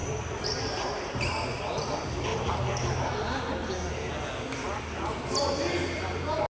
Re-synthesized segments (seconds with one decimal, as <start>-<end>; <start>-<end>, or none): none